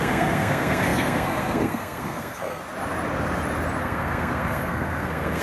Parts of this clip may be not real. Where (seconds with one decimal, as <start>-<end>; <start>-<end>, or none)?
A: 0.0-2.6; 3.8-5.4